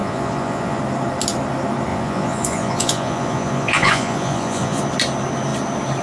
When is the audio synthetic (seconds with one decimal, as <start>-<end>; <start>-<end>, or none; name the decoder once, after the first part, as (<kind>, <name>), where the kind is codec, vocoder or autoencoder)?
0.0-0.8 (vocoder, Vocos); 1.9-4.8

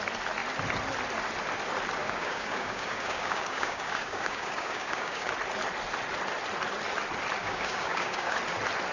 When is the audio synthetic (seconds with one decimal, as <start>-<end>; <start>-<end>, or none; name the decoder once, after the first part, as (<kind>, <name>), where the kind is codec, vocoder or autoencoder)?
2.0-5.3 (codec, DAC); 7.4-8.4